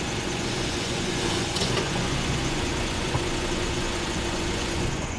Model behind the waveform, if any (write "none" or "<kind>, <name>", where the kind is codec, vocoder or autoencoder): vocoder, Vocos